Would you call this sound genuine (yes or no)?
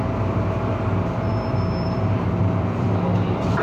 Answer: no